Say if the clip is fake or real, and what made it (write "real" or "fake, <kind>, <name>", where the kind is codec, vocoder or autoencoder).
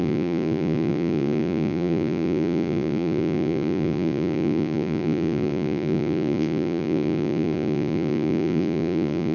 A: fake, vocoder, Vocos